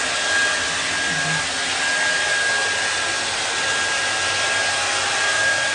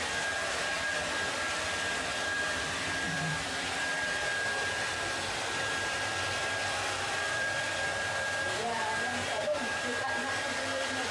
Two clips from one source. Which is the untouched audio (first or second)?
first